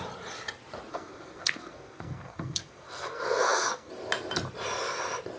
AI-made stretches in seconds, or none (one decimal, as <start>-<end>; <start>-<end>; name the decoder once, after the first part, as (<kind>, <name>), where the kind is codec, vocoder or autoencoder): 0.9-3.9 (codec, SNAC)